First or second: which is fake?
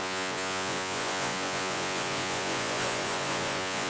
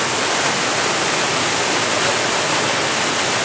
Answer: first